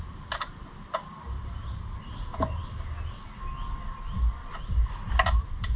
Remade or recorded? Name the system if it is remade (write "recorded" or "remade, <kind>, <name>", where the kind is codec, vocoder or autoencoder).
recorded